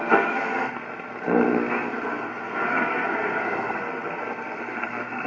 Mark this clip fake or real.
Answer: fake